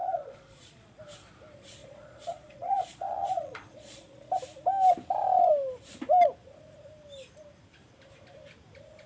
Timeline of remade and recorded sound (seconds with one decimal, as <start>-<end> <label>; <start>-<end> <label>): 0.0-1.0 remade; 1.0-1.8 recorded; 1.8-4.3 remade; 4.3-9.1 recorded